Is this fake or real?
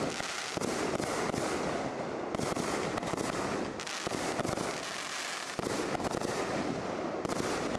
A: real